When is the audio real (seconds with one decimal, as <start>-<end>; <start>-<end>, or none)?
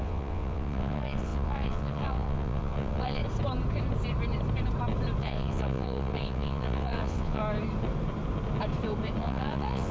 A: 3.2-5.2; 7.4-9.2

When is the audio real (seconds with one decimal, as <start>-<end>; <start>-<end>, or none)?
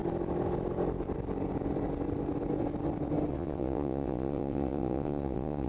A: 0.0-3.3